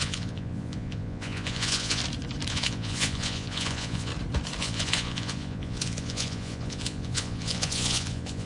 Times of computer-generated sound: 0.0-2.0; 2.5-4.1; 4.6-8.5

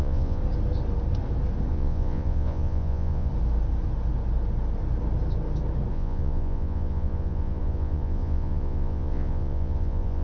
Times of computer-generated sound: 0.0-0.4; 1.7-3.3; 5.9-10.2

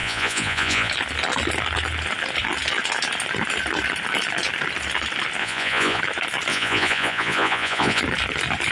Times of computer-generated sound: 0.0-0.9; 5.4-6.0; 6.5-8.0

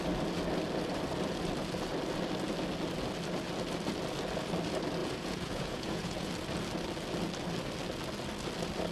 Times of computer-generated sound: 5.0-6.3

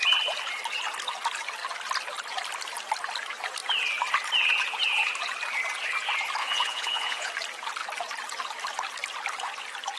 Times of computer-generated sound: 6.4-7.3

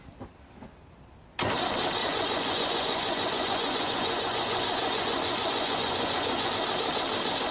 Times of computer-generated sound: 2.0-6.5

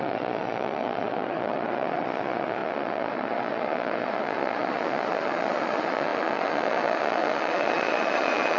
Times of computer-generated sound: 0.0-8.6